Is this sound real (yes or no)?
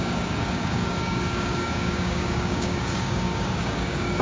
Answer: no